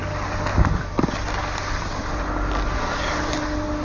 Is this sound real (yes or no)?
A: yes